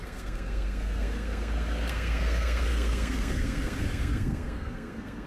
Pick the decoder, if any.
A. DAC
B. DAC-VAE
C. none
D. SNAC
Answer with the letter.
D